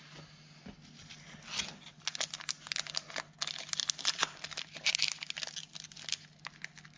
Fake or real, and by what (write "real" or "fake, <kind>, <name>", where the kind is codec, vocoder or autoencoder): real